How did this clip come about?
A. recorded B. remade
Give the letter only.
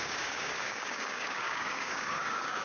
B